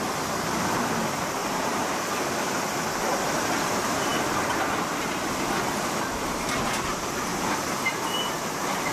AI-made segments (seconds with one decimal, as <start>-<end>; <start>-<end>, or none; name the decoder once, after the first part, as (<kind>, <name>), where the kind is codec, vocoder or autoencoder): 1.4-2.3 (vocoder, BigVGAN v2); 7.3-8.9

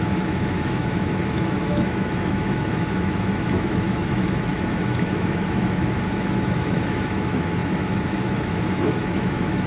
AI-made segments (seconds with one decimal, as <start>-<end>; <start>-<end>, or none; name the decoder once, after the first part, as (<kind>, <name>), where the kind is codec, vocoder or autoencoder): 0.0-9.7 (autoencoder, DAC-VAE)

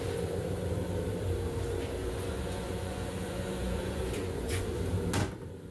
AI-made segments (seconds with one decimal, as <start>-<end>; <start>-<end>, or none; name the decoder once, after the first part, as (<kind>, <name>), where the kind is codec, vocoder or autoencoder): 2.0-4.8 (vocoder, Vocos)

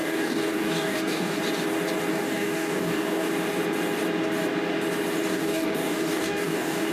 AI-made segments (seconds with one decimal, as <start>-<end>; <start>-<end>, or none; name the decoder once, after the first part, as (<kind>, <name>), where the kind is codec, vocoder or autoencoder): 0.0-1.4 (codec, DAC); 2.1-3.3; 5.3-6.9